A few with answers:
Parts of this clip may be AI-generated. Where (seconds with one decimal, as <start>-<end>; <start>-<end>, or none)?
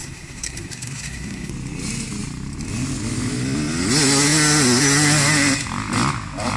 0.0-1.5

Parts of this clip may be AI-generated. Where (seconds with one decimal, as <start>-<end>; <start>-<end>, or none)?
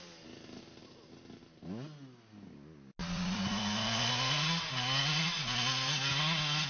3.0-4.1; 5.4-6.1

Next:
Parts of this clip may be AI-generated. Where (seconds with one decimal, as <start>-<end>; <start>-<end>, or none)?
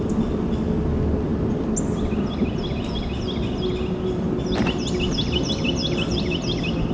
none